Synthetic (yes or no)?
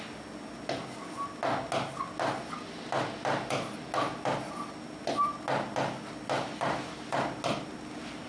no